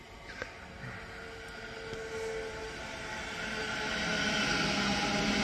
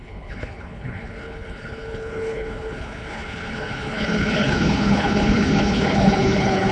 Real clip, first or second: first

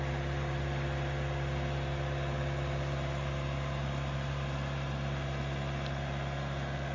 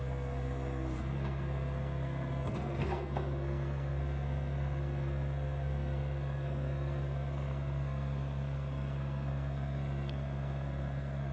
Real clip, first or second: first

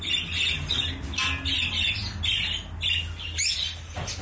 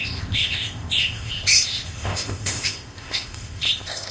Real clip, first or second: first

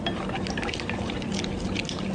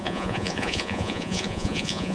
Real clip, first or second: first